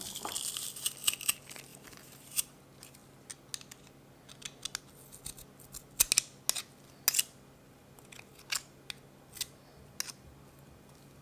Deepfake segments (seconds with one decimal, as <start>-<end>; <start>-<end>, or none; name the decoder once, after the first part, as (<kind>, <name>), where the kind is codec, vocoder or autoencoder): 1.7-2.6 (vocoder, BigVGAN v2)